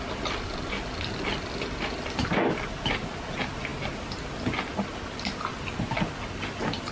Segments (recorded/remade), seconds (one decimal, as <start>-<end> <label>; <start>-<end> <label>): 0.0-6.9 recorded